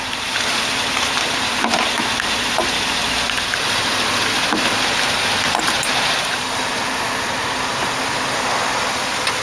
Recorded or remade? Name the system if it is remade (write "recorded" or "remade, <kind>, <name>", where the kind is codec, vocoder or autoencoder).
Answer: recorded